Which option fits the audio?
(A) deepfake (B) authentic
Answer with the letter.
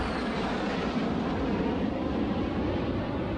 B